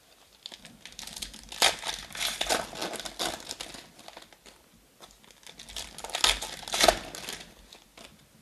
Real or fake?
real